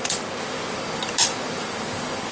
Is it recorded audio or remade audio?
recorded